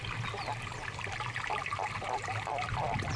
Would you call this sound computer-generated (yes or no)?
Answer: no